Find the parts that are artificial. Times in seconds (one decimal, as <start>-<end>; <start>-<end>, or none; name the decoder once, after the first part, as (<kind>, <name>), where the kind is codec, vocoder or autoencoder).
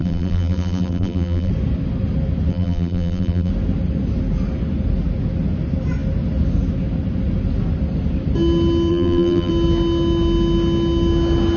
0.0-1.5 (vocoder, BigVGAN v2); 2.5-3.5; 8.9-9.5